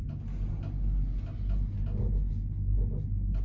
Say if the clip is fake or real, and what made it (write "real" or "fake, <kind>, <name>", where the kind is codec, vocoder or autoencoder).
real